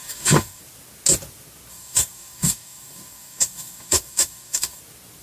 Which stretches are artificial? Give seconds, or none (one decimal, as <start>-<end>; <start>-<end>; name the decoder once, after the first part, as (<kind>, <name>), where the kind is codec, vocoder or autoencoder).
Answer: 0.0-0.6 (codec, DAC); 1.7-4.8